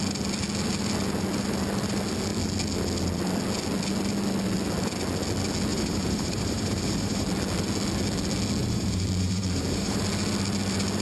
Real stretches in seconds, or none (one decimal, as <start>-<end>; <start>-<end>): 0.0-5.7; 7.3-8.6; 10.0-11.0